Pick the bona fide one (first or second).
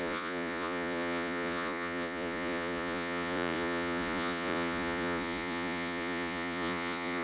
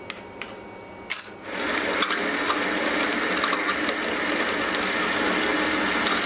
second